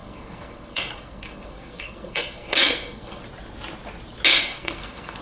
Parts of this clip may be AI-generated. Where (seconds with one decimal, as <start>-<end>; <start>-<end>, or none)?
0.0-3.2; 4.3-5.2

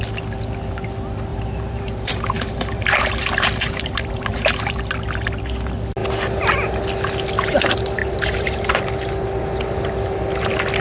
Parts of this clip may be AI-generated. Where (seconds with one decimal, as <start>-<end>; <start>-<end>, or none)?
1.3-4.8; 8.0-8.8

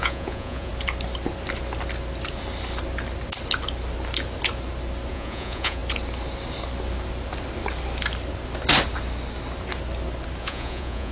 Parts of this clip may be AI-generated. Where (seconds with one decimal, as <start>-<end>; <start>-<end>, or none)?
0.0-0.7; 5.1-5.8; 10.4-11.1

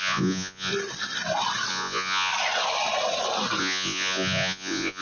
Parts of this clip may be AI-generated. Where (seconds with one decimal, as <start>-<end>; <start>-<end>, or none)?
0.0-0.7; 1.7-2.3; 3.6-5.0

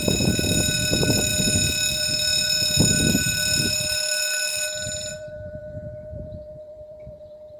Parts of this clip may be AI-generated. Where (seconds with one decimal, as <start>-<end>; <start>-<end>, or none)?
0.0-1.3; 5.1-7.6

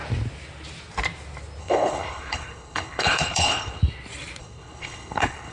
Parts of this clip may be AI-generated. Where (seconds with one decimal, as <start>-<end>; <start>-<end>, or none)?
1.6-3.8; 4.4-5.5

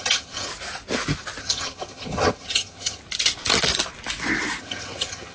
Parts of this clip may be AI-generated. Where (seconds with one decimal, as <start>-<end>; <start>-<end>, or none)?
0.0-0.5; 1.4-3.0; 4.6-5.3

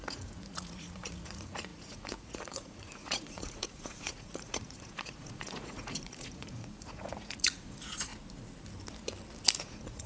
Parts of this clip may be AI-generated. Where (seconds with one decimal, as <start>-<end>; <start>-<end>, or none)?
0.0-8.1; 9.6-10.1